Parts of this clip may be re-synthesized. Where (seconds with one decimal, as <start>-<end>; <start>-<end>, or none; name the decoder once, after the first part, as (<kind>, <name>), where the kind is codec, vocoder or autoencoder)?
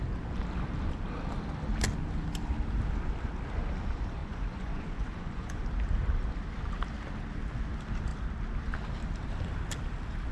4.2-5.6 (vocoder, Vocos)